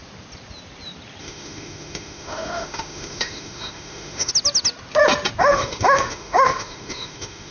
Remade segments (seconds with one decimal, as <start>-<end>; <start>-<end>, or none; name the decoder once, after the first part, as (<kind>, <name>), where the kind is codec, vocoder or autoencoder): 1.2-4.3 (autoencoder, DAC-VAE); 5.4-7.5